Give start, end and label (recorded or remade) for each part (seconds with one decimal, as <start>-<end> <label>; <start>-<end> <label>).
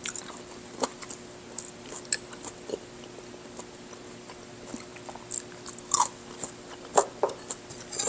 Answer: 0.0-8.1 recorded